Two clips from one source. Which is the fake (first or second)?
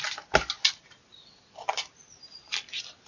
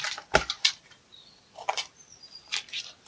second